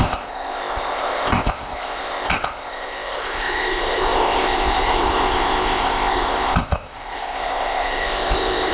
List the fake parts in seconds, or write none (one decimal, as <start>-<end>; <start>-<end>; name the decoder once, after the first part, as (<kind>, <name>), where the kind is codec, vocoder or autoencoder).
0.0-8.7 (codec, ZipCodec)

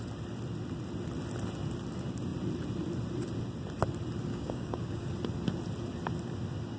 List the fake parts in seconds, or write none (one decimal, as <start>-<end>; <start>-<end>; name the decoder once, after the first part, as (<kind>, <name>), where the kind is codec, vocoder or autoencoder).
4.3-5.1 (codec, DAC)

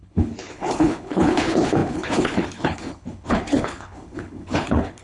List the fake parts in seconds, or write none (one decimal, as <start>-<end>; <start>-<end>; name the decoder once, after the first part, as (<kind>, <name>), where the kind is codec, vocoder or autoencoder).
0.0-5.0 (codec, HILCodec)